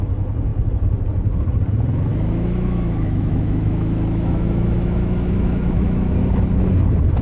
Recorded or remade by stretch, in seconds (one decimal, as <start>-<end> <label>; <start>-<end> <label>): 0.0-2.1 recorded; 2.1-6.2 remade; 6.2-7.2 recorded